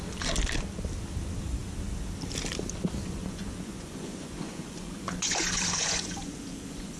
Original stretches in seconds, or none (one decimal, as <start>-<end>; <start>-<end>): 0.0-3.0